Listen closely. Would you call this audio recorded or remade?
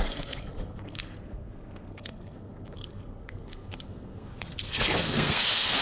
remade